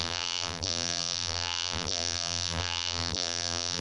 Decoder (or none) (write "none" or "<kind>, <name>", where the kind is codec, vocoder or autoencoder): vocoder, BigVGAN v2